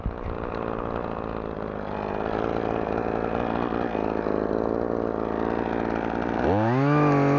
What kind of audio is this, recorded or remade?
recorded